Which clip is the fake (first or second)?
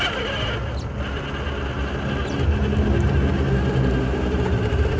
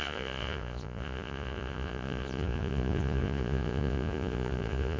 second